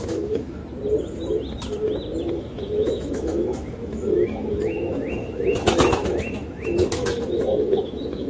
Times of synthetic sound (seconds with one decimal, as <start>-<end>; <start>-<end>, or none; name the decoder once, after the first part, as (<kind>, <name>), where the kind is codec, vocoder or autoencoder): 0.0-0.6 (autoencoder, DAC-VAE); 2.3-8.3